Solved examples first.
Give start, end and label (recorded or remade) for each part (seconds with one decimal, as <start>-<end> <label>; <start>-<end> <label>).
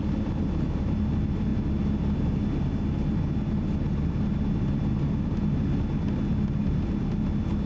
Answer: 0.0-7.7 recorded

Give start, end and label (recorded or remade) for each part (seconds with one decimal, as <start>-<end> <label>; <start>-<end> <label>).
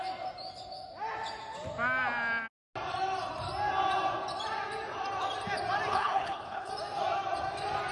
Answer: 0.0-5.9 recorded; 5.9-6.7 remade; 6.7-7.9 recorded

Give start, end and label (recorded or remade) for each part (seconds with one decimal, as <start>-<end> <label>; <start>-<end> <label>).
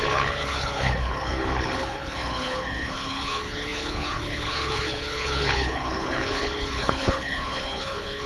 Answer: 0.0-8.3 remade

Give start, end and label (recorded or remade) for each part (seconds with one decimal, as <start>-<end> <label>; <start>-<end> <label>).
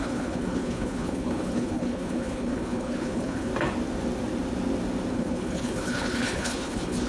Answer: 0.0-3.5 remade; 3.5-5.1 recorded; 5.1-7.1 remade